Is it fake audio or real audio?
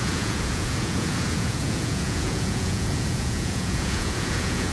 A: fake